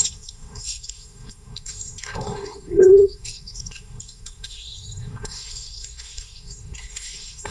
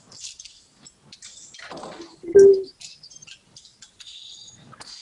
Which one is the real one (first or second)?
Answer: second